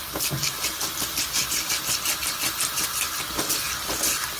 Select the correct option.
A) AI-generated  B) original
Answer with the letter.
B